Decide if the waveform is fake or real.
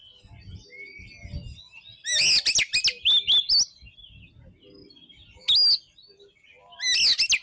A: real